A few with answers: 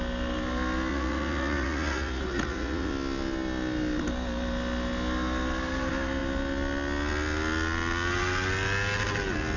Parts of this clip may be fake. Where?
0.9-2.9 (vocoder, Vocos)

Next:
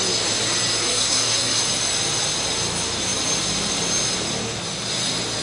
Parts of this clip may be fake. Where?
0.8-1.6 (codec, SNAC)